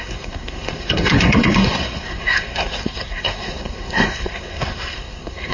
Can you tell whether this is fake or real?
fake